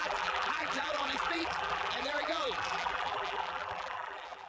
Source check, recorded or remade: remade